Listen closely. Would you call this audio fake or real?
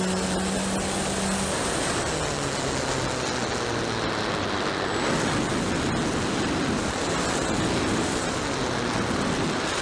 real